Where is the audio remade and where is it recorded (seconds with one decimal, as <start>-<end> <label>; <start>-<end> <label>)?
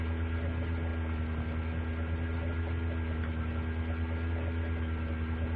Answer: 0.0-5.6 recorded